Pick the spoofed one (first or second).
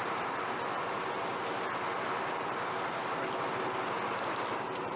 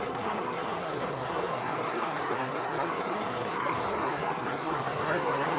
second